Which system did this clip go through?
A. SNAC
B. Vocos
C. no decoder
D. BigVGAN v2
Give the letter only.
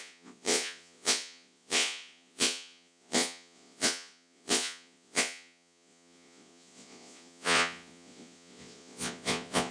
B